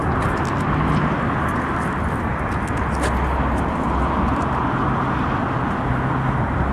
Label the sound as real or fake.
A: real